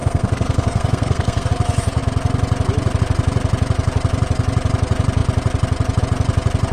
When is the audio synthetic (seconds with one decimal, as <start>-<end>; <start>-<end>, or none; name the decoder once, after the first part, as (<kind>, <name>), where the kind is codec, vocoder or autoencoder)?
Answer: 0.0-1.5 (codec, SNAC)